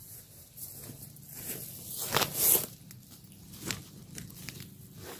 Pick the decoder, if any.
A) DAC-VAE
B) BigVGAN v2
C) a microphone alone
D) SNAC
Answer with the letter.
C